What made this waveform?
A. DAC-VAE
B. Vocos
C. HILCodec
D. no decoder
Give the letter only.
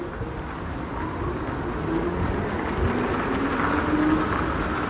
D